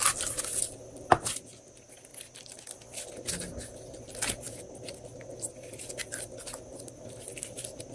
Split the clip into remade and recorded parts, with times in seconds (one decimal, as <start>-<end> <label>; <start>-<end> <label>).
0.0-7.9 recorded